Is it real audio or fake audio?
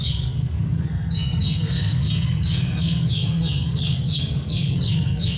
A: fake